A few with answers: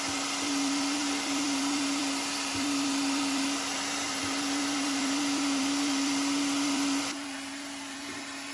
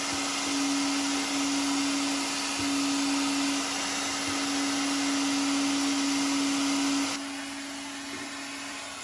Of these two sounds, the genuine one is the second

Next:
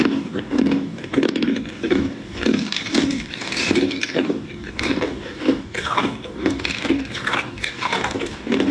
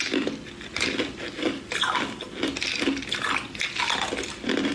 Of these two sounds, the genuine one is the second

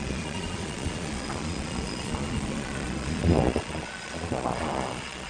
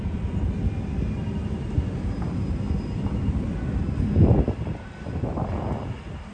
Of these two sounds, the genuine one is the second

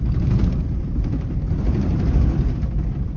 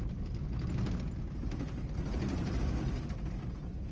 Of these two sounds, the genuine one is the second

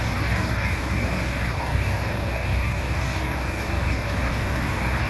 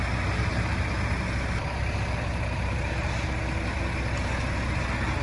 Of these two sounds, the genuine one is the second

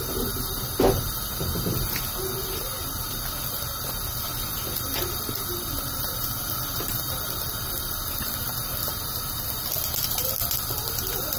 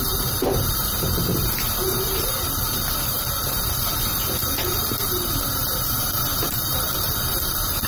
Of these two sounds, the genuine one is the first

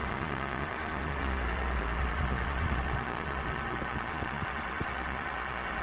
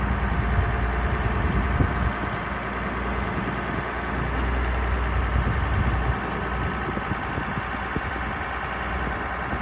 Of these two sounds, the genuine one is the second